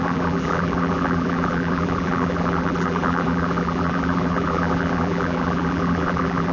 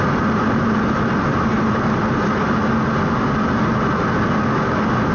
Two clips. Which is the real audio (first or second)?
second